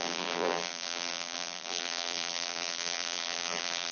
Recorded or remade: remade